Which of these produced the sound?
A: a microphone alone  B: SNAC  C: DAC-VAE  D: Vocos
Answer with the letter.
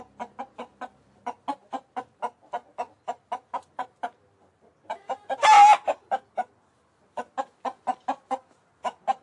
A